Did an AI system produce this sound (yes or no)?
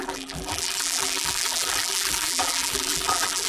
yes